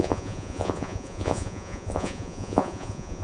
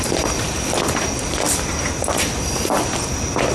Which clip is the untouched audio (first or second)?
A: second